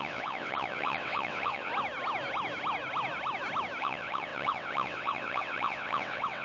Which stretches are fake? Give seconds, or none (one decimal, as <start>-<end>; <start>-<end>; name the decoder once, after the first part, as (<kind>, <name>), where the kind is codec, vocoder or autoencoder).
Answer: 0.0-1.7 (vocoder, WaveNeXt); 3.8-6.4